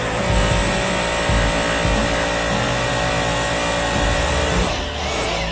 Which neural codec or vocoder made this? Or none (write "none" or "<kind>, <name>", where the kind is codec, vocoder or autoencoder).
none